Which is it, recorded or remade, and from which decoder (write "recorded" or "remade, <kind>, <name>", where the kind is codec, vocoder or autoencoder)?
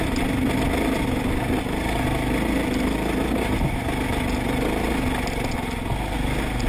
recorded